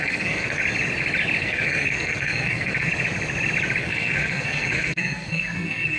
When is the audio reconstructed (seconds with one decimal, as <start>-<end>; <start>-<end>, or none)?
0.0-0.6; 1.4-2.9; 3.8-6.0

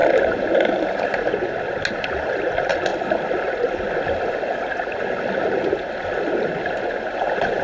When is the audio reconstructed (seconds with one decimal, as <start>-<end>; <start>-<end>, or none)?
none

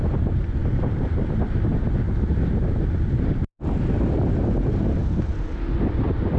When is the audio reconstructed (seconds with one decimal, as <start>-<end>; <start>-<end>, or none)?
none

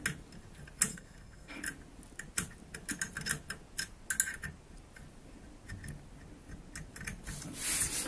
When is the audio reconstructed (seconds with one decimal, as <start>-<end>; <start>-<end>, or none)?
0.9-1.6

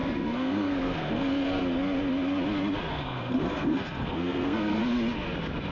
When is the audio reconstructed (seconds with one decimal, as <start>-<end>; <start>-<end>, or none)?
0.0-1.6; 2.9-4.8

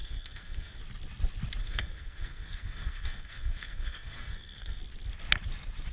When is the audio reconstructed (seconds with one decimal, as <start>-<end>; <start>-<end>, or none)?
0.0-0.8; 1.6-4.8